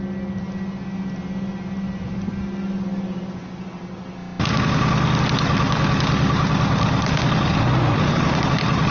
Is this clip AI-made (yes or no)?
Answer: no